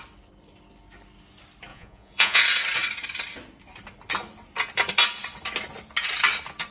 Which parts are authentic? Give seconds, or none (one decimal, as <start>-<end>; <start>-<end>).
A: 0.0-1.7; 2.4-6.7